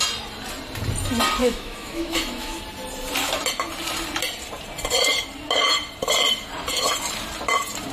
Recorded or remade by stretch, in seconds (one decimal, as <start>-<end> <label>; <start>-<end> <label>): 0.0-1.4 recorded; 1.4-2.6 remade; 2.6-7.9 recorded